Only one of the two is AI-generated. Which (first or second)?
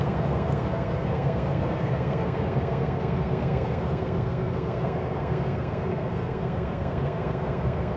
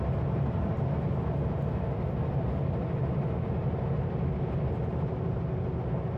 first